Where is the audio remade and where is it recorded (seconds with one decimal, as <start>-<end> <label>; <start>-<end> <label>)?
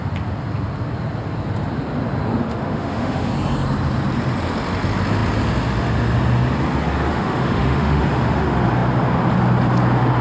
0.0-2.4 recorded; 2.4-3.3 remade; 3.3-7.1 recorded; 7.1-8.0 remade; 8.0-10.2 recorded